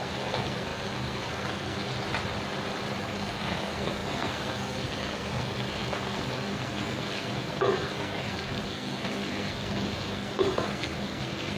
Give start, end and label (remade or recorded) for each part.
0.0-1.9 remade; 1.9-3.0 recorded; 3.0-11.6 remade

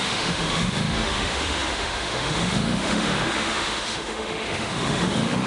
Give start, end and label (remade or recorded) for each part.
0.0-5.5 remade

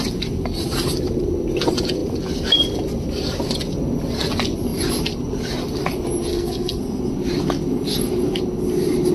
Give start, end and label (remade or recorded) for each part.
0.0-6.3 recorded; 6.3-6.8 remade; 6.8-9.1 recorded

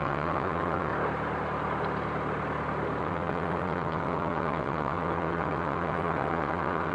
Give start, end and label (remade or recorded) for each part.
0.0-0.9 remade; 0.9-3.0 recorded; 3.0-6.9 remade